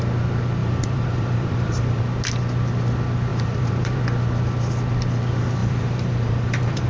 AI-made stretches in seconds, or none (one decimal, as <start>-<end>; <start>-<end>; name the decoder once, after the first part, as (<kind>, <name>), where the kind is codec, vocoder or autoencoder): 0.6-2.0 (vocoder, BigVGAN v2); 3.3-4.0; 5.6-6.9